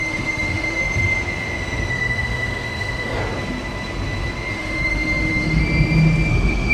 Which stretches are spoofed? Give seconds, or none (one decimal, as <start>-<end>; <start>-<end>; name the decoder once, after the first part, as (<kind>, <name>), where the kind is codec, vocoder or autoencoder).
0.0-0.8 (autoencoder, DAC-VAE); 1.9-3.2; 4.5-5.6; 6.3-6.7